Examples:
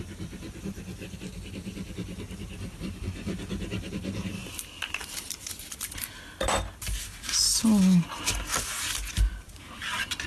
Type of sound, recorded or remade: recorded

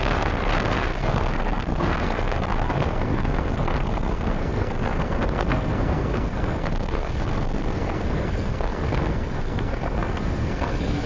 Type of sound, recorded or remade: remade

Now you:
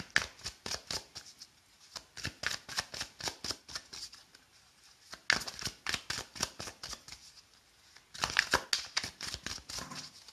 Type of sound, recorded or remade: recorded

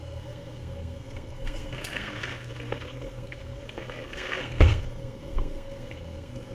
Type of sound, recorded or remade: remade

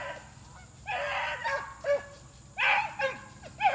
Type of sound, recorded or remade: recorded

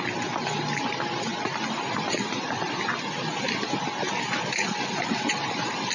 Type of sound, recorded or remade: recorded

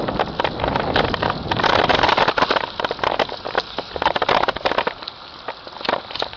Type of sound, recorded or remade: recorded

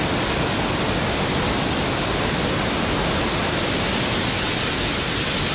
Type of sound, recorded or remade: recorded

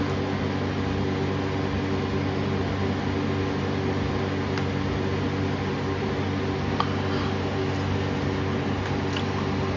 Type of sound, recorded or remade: recorded